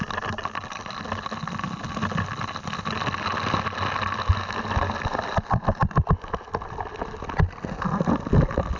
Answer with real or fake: real